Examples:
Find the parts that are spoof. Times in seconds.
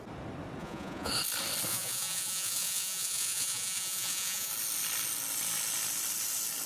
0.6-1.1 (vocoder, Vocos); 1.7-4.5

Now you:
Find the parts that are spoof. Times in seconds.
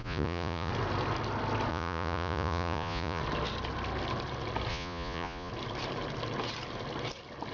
0.0-0.7 (vocoder, Vocos); 1.7-3.2; 4.7-5.5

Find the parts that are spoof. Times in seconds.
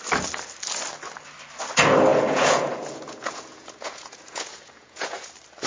2.1-5.3 (vocoder, Vocos)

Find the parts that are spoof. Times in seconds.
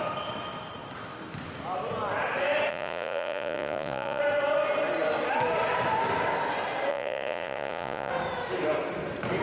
2.7-4.2 (vocoder, Vocos); 6.9-8.1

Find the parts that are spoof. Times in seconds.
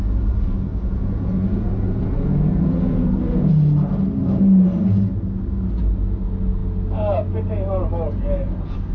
0.7-3.5 (vocoder, Vocos)